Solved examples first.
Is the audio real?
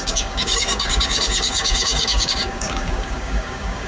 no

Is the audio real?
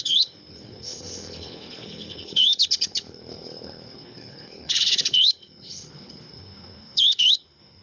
no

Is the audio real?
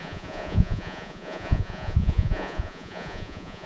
no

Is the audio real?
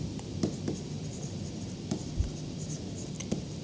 yes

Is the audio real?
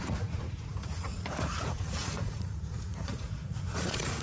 no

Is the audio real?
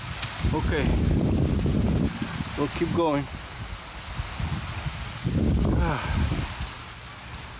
yes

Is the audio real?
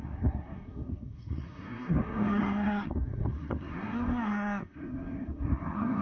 no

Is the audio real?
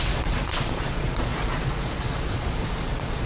no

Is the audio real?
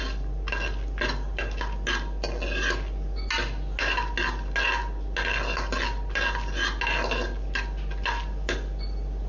yes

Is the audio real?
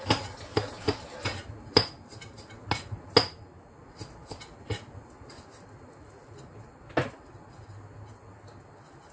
yes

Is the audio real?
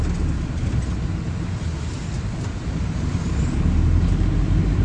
yes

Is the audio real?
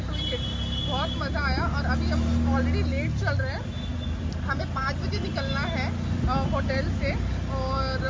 yes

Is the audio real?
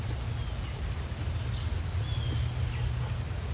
yes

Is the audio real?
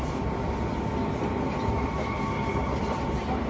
yes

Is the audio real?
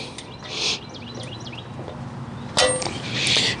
yes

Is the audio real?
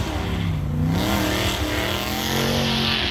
yes